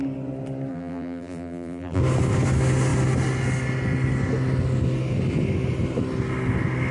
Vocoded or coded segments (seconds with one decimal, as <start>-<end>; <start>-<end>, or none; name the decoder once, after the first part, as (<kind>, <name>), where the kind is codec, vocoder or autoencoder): 0.7-2.0 (vocoder, BigVGAN v2)